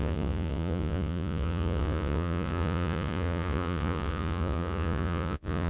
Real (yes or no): no